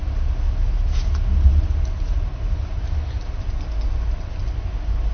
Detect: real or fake real